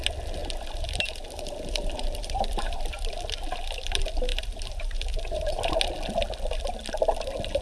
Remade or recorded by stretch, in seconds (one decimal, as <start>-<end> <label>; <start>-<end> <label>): 0.0-0.4 recorded; 0.4-3.1 remade; 3.1-4.3 recorded; 4.3-5.7 remade; 5.7-7.6 recorded